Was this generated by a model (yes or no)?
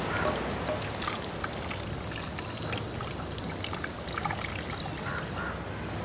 no